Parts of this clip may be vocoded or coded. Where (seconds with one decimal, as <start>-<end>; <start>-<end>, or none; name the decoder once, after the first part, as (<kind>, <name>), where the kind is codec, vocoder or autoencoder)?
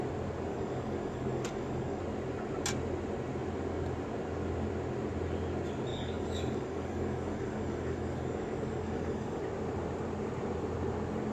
0.5-2.0 (codec, DAC); 5.9-9.4